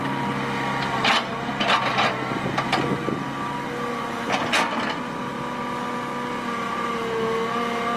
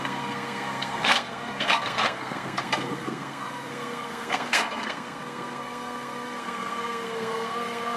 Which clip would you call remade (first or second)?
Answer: second